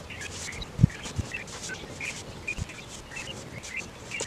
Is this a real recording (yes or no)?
yes